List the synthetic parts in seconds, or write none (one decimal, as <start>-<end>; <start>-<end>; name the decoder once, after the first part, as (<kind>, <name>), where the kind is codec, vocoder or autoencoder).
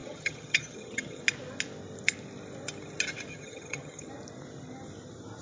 0.0-1.2 (vocoder, HiFi-GAN); 3.3-4.1